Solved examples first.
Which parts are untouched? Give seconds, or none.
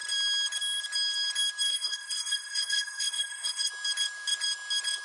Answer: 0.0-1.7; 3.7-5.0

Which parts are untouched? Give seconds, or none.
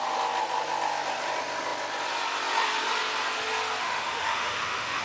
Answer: 0.0-3.8